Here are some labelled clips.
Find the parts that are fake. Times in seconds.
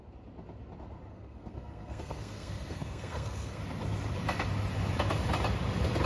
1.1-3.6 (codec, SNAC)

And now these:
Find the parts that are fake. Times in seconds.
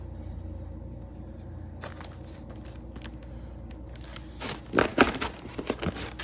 none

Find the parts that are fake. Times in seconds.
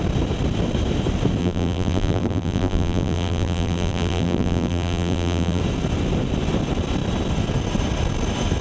1.4-5.6 (vocoder, BigVGAN v2)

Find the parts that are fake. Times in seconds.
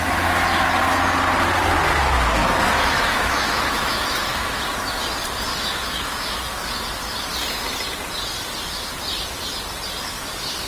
2.4-4.6 (autoencoder, DAC-VAE); 5.5-6.4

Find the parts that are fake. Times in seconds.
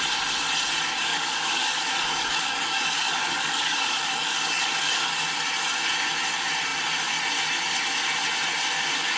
1.1-5.1 (codec, DAC)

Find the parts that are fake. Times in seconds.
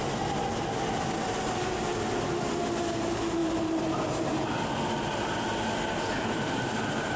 none